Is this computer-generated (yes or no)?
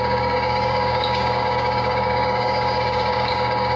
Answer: yes